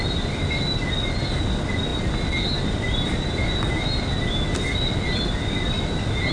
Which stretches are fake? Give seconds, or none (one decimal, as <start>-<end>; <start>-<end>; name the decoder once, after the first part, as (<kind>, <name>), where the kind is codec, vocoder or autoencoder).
none